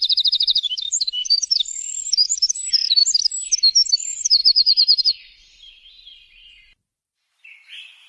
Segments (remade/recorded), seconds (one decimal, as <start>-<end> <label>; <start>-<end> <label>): 0.0-3.0 remade; 3.0-3.9 recorded; 3.9-8.1 remade